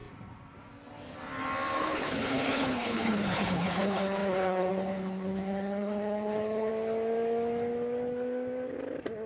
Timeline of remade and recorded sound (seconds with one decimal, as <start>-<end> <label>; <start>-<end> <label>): 0.0-1.8 recorded; 1.8-6.7 remade; 6.7-9.3 recorded